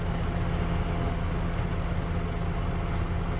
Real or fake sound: real